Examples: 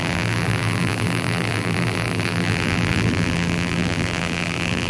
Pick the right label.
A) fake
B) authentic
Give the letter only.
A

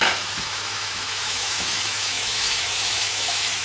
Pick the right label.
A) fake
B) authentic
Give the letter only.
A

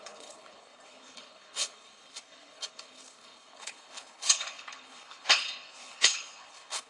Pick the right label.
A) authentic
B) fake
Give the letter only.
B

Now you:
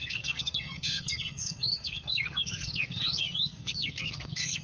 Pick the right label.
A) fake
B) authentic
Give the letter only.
A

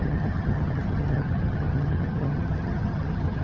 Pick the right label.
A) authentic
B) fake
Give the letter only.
B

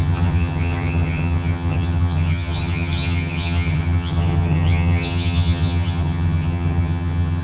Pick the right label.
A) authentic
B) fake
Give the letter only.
B